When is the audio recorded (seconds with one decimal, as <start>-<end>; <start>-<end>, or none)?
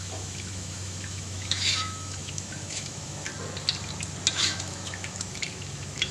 3.3-4.3